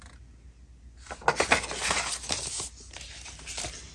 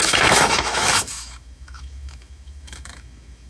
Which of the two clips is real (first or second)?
first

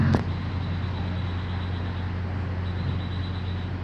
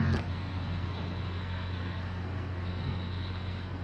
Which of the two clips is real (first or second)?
first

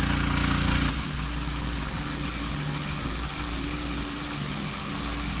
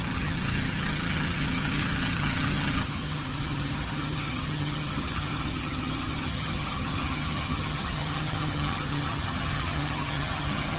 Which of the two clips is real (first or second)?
first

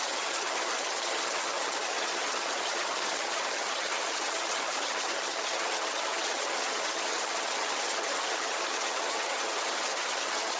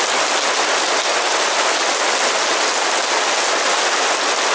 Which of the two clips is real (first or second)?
second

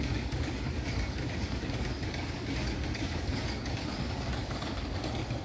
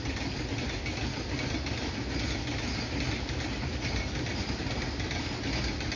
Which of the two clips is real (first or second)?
second